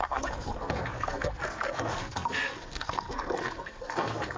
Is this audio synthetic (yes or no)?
yes